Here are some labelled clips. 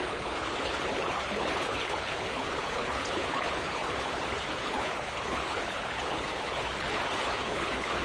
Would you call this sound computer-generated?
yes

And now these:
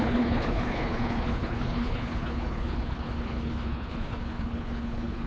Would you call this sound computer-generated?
yes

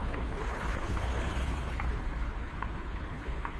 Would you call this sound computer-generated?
yes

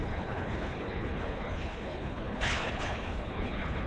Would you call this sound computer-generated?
yes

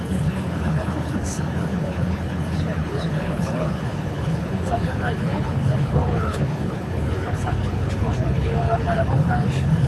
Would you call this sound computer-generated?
yes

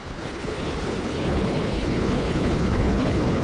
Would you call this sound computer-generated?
yes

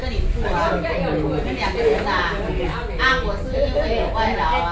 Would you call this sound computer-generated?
no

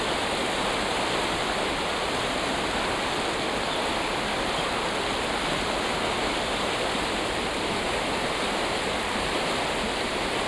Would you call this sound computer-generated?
no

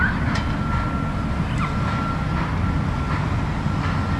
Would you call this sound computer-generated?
no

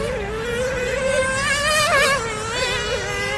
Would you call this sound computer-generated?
no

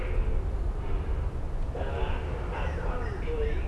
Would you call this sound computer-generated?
no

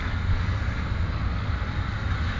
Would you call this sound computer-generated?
no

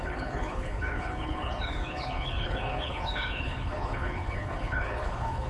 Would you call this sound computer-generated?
yes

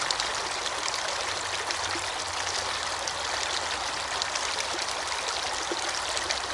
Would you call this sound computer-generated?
no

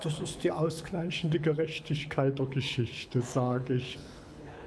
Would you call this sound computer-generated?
yes